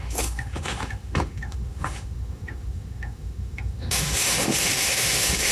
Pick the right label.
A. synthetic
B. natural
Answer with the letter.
A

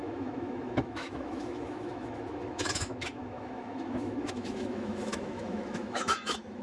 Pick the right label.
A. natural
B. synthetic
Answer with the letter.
B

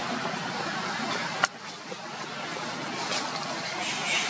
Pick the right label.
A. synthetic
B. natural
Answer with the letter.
B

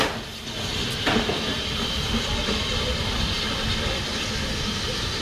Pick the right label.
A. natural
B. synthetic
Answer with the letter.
A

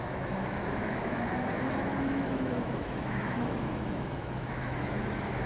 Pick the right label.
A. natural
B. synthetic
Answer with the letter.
B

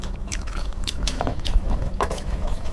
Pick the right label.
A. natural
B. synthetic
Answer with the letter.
B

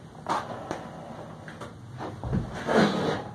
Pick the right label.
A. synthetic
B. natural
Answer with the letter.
B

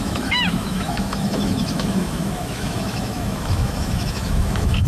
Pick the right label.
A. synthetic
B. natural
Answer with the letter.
A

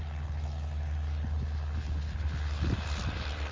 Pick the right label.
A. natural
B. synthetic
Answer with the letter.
A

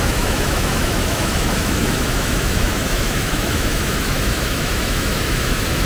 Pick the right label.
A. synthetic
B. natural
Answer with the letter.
A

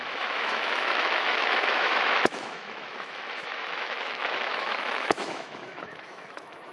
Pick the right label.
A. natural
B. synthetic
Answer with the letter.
B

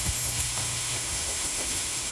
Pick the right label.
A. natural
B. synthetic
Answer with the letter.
B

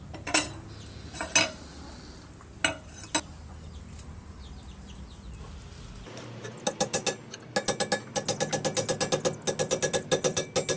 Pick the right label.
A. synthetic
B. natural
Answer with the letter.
B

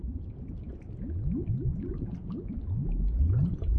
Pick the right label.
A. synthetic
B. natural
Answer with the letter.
B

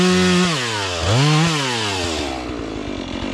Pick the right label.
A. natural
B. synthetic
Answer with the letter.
A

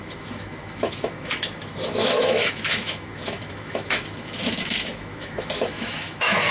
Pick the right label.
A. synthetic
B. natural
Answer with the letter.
A